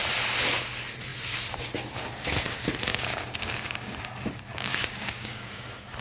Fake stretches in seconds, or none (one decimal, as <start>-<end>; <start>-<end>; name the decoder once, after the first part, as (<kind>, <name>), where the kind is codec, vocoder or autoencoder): 2.9-4.0 (codec, DAC); 4.5-5.6